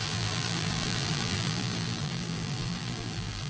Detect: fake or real fake